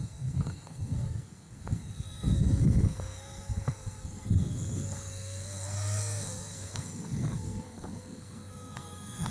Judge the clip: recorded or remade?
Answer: remade